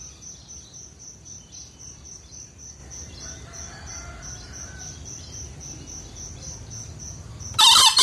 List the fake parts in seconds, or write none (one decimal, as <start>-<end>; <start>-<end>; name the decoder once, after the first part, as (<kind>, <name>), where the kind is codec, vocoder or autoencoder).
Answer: 0.0-2.8 (vocoder, BigVGAN v2); 7.6-8.0